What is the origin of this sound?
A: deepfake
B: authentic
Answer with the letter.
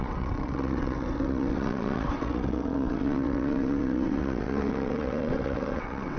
A